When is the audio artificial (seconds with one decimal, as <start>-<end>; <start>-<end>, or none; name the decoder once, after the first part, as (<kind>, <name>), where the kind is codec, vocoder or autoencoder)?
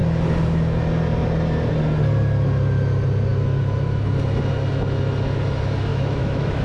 5.9-6.6 (autoencoder, DAC-VAE)